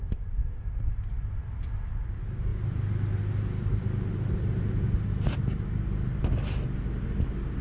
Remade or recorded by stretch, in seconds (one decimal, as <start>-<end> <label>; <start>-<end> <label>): 0.0-7.6 recorded